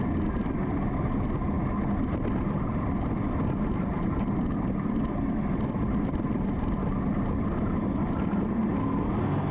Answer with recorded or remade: recorded